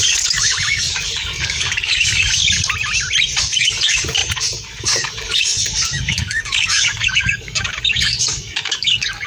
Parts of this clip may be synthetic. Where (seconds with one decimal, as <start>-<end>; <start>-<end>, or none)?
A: 0.0-2.4; 3.4-9.3